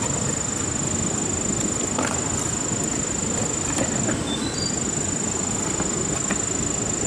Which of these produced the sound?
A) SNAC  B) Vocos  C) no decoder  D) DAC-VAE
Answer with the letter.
C